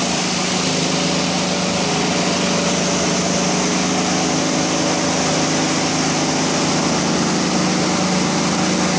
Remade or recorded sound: recorded